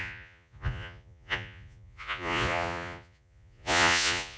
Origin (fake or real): fake